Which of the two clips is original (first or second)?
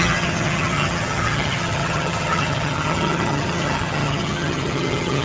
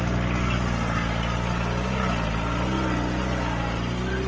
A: second